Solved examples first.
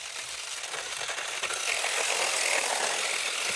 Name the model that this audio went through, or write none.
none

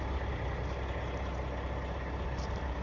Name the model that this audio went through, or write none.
none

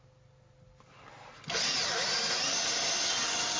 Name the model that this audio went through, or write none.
none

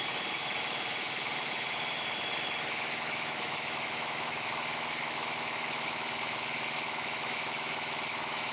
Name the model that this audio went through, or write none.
autoencoder, DAC-VAE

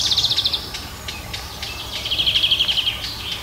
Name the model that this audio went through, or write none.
none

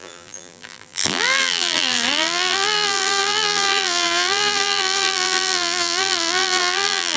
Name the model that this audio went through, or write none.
vocoder, BigVGAN v2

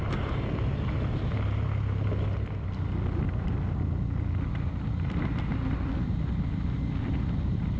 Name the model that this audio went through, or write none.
none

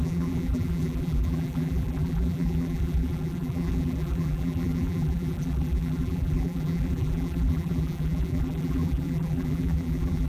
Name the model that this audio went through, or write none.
vocoder, BigVGAN v2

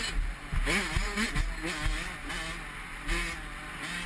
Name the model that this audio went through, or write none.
none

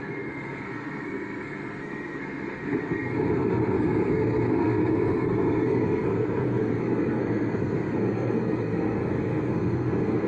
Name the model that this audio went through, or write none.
codec, SNAC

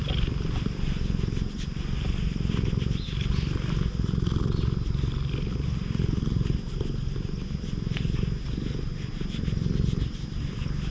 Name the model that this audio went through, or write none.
none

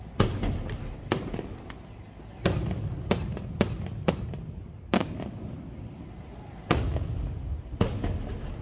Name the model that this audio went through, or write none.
none